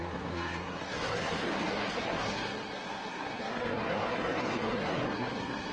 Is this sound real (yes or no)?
no